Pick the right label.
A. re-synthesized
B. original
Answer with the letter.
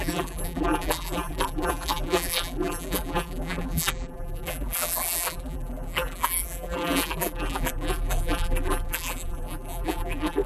A